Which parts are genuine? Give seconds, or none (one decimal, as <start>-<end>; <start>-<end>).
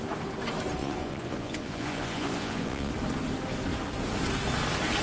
0.0-0.8; 2.9-5.0